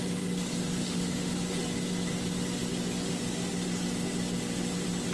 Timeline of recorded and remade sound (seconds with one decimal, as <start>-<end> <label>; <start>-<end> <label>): 0.0-0.8 recorded; 0.8-1.4 remade; 1.4-5.1 recorded